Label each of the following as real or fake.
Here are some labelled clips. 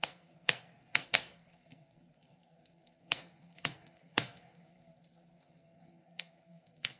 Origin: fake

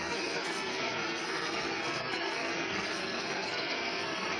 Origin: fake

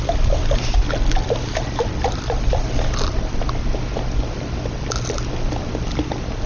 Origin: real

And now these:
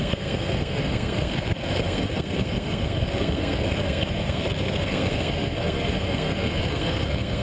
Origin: fake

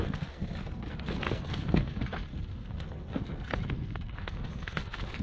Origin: fake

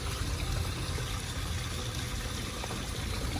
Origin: real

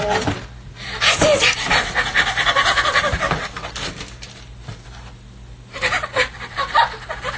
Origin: real